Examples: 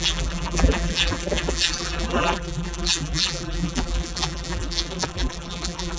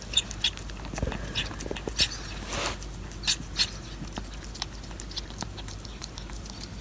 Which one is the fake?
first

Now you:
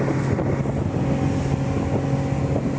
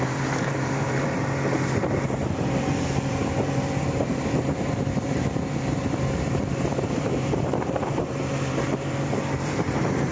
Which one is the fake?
second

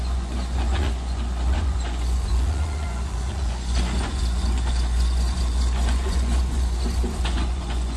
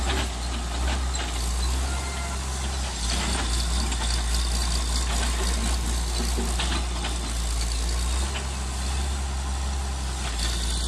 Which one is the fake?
first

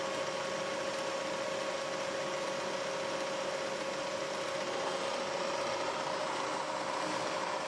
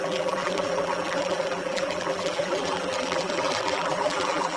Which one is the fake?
second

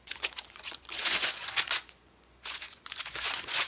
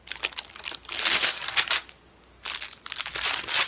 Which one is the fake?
first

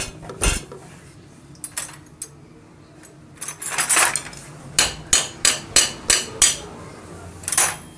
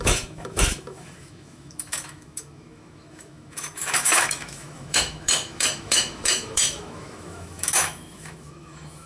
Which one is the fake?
second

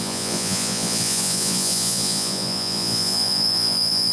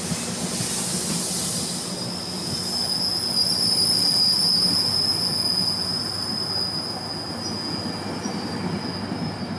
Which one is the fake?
first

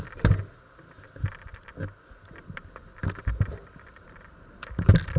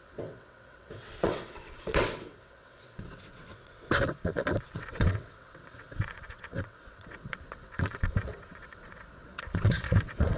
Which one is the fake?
second